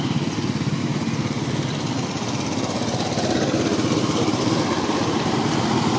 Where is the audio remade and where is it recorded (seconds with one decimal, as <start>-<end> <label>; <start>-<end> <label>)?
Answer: 0.0-6.0 recorded